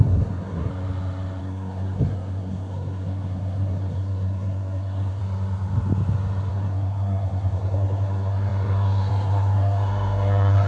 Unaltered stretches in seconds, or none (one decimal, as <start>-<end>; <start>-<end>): 0.7-1.4; 5.2-6.5